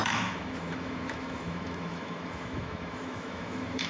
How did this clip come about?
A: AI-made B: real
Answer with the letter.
A